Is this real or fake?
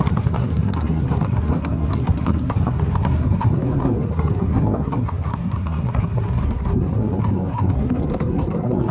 fake